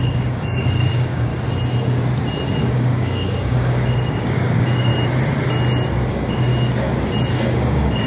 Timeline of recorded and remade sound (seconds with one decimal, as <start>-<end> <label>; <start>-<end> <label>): 0.0-1.3 remade; 1.3-2.6 recorded; 2.6-4.9 remade; 4.9-6.1 recorded; 6.1-6.5 remade; 6.5-7.3 recorded; 7.3-8.1 remade